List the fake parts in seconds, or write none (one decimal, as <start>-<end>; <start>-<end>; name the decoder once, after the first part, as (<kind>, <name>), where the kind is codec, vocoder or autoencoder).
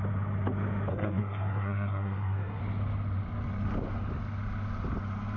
0.9-2.6 (codec, SNAC)